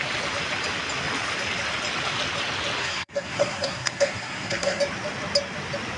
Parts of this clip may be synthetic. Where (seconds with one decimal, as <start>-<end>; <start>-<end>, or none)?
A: 2.8-4.8